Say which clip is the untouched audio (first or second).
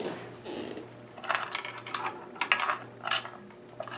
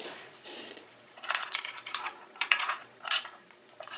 first